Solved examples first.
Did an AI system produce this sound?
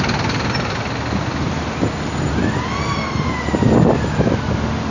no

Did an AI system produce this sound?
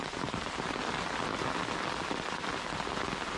no